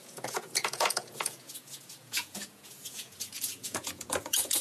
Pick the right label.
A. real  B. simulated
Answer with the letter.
B